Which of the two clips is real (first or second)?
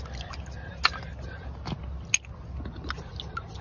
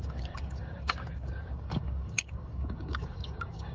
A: first